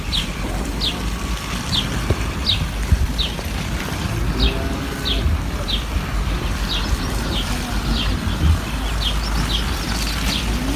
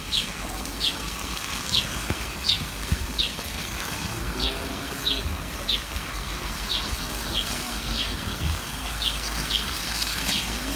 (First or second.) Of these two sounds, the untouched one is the first